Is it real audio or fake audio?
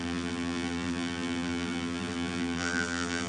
fake